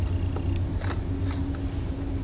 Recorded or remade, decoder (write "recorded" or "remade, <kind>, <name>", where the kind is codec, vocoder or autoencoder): recorded